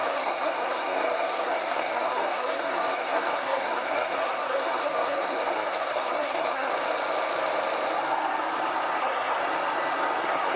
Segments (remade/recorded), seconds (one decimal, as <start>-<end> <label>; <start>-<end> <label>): 0.0-6.7 remade; 6.7-9.0 recorded; 9.0-9.4 remade; 9.4-10.2 recorded; 10.2-10.6 remade